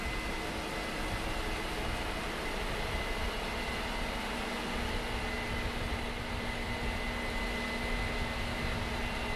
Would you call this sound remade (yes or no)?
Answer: no